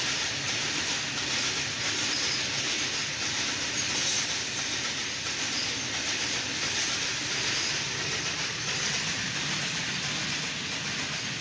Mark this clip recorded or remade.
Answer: recorded